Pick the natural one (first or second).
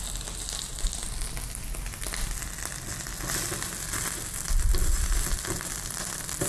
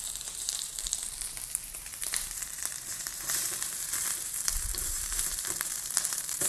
first